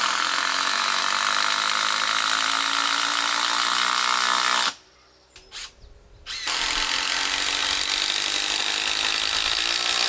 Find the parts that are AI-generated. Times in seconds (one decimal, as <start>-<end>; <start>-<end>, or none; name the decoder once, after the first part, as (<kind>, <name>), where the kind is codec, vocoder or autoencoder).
0.5-1.0 (autoencoder, DAC-VAE)